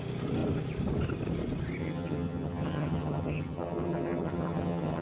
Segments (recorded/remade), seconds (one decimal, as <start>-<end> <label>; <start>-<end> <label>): 0.0-1.8 recorded; 1.8-5.0 remade